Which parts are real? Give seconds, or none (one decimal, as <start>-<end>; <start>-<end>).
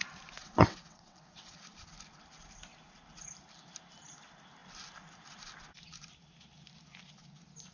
0.0-0.4; 1.6-7.7